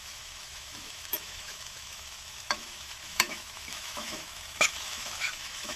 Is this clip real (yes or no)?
no